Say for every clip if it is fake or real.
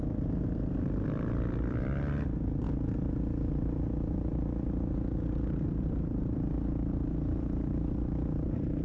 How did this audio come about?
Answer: real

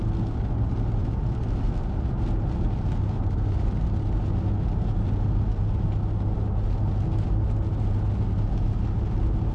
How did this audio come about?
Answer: real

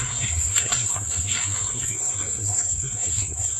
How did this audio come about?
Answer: fake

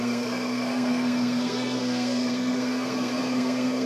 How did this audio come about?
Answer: fake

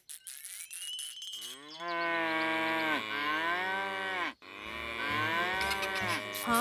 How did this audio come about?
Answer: real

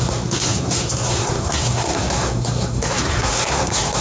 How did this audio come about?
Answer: fake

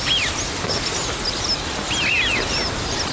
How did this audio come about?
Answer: real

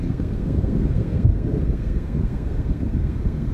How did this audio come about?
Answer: fake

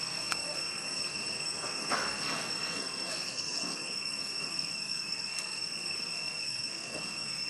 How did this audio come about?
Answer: fake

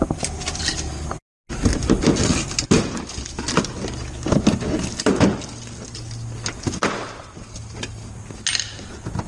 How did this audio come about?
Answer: real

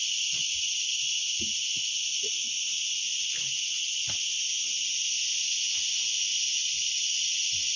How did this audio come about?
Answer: real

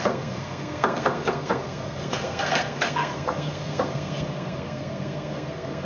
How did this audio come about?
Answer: fake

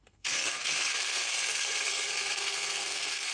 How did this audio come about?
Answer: fake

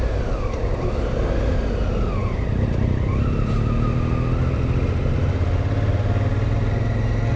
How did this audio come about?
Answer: real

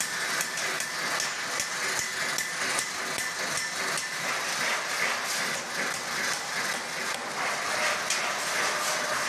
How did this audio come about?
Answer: real